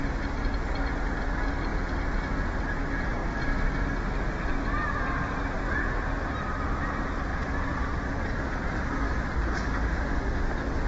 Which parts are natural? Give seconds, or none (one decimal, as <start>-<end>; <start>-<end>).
0.0-10.9